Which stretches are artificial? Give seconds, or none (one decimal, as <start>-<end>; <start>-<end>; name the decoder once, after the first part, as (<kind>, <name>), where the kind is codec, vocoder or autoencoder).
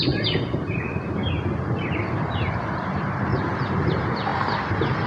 0.0-1.2 (vocoder, BigVGAN v2); 1.9-3.3; 3.9-4.3